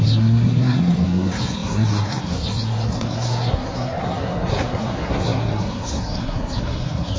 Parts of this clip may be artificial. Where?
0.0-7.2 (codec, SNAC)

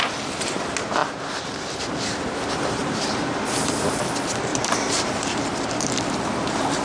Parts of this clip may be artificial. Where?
2.8-4.0 (vocoder, BigVGAN v2); 4.5-6.1

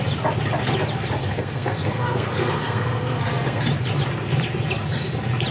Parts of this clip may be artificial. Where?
1.2-3.6 (codec, SNAC)